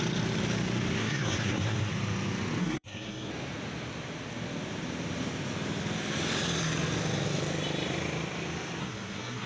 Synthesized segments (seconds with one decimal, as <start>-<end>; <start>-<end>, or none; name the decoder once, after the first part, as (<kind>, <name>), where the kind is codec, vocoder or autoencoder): 1.0-1.9 (codec, SNAC); 2.6-3.3; 8.8-9.5